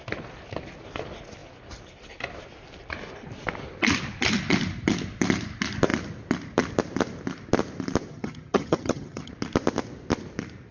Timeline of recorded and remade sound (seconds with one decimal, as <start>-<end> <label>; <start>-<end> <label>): 0.0-8.1 recorded; 8.1-9.3 remade; 9.3-10.7 recorded